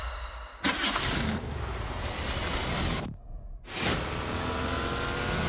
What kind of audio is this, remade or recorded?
recorded